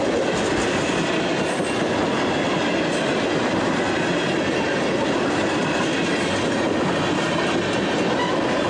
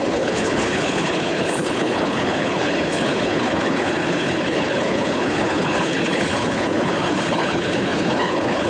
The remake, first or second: second